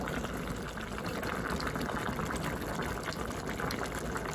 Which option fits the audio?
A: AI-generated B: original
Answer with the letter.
B